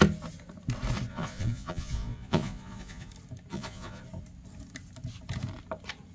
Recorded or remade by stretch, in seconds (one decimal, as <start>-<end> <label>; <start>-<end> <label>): 0.0-1.1 recorded; 1.1-3.1 remade; 3.1-3.5 recorded; 3.5-4.0 remade; 4.0-6.1 recorded